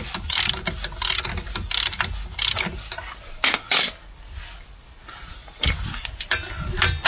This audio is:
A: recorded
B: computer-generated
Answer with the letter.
A